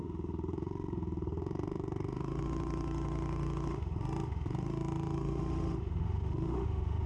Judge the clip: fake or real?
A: fake